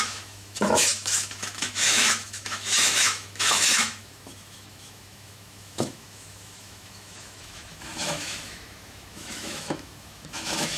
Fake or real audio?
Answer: fake